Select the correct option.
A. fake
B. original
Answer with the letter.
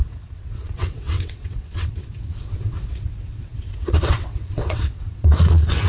A